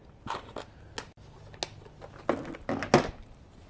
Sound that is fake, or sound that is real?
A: real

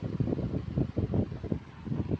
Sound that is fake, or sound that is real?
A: real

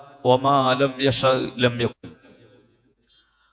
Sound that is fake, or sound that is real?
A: fake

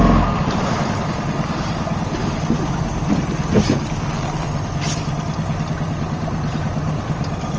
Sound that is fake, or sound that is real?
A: real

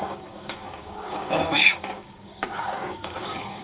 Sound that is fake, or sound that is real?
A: fake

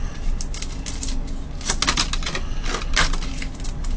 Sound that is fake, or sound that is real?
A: real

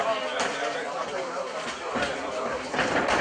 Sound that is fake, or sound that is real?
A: fake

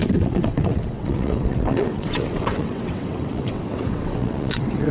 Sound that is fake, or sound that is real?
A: fake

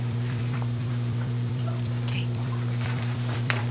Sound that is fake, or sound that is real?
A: fake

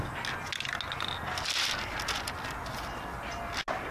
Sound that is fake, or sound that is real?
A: real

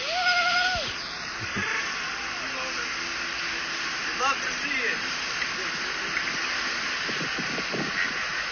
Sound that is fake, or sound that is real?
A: real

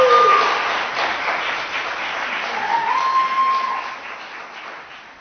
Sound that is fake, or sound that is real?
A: real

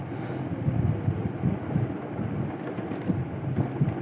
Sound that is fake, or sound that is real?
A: real